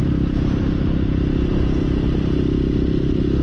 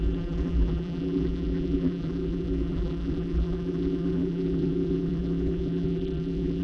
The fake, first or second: second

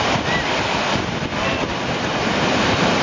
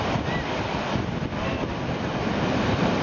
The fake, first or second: first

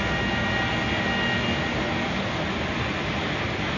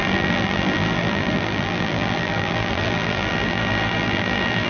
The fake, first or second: second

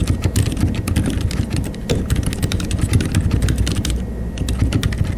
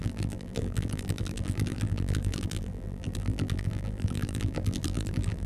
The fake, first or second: second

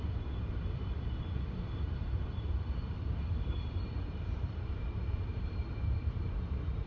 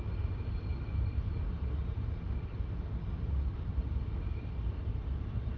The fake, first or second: first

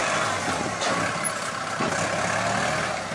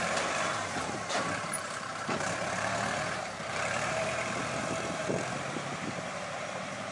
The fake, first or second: second